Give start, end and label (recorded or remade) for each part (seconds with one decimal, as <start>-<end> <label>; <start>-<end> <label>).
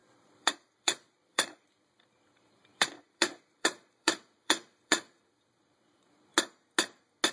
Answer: 0.0-6.3 remade; 6.3-7.3 recorded